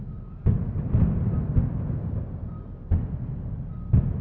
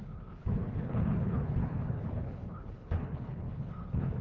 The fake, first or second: second